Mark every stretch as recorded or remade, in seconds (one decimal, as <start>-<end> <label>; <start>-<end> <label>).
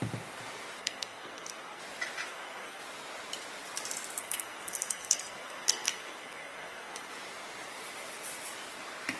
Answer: 0.0-0.8 recorded; 0.8-1.8 remade; 1.8-2.3 recorded; 2.3-2.8 remade; 2.8-4.2 recorded; 4.2-7.1 remade; 7.1-9.2 recorded